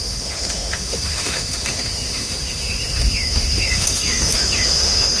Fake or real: fake